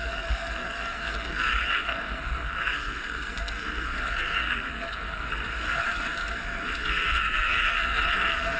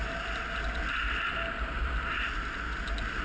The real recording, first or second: second